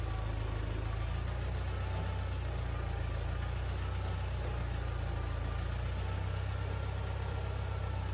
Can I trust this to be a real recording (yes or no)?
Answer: yes